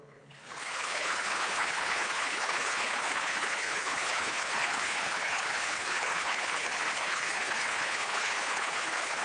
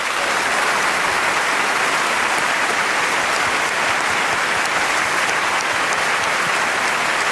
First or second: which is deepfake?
first